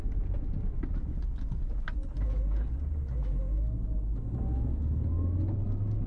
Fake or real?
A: real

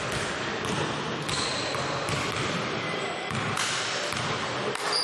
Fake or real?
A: fake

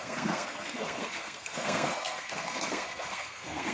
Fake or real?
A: fake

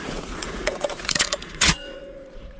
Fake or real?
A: fake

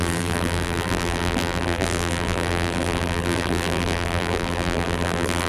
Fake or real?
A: fake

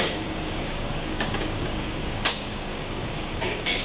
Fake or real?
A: fake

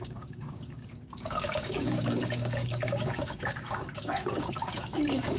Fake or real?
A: fake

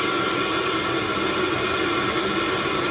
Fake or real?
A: real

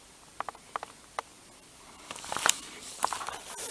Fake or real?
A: real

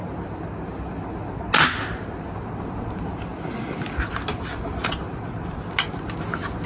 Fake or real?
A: real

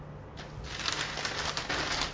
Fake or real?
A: real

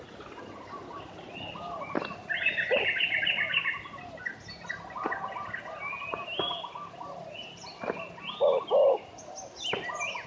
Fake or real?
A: real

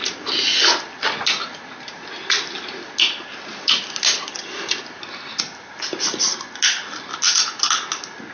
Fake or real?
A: real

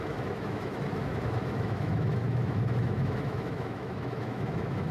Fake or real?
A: fake